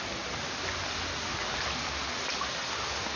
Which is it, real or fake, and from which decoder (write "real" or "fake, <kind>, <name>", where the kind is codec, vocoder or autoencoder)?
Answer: real